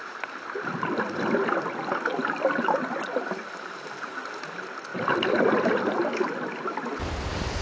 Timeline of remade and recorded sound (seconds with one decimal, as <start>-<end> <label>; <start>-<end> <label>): 0.0-7.6 recorded